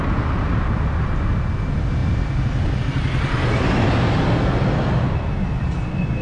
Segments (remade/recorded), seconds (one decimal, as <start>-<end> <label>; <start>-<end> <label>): 0.0-6.2 recorded